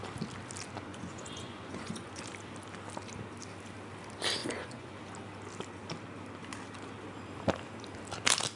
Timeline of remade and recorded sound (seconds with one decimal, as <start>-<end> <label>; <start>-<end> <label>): 0.0-0.9 recorded; 0.9-2.2 remade; 2.2-4.4 recorded; 4.4-4.9 remade; 4.9-8.6 recorded